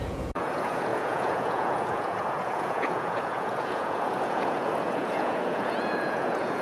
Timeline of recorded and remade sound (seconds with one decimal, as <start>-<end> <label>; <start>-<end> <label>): 0.0-6.6 remade

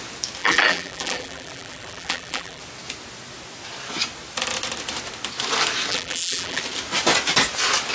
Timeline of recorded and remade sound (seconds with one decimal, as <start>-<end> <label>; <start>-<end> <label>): 0.0-0.4 recorded; 0.4-2.6 remade; 2.6-5.9 recorded; 5.9-6.6 remade; 6.6-7.9 recorded

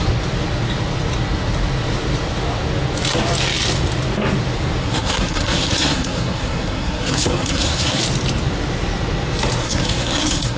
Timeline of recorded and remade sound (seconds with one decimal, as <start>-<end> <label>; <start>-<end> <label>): 0.0-4.8 recorded; 4.8-8.0 remade; 8.0-9.6 recorded; 9.6-10.6 remade